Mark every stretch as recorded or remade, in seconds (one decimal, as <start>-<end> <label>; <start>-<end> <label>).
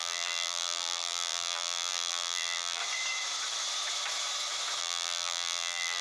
0.0-2.8 remade; 2.8-4.8 recorded; 4.8-6.0 remade